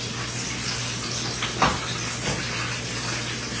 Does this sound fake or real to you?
real